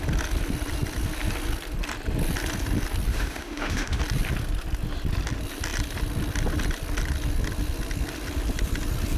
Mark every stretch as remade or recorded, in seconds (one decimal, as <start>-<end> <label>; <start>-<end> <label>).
0.0-3.1 recorded; 3.1-4.0 remade; 4.0-9.2 recorded